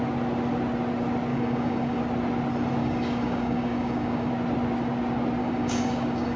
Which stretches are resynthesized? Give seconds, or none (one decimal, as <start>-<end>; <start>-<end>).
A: 1.3-2.0; 2.8-4.3; 5.4-6.4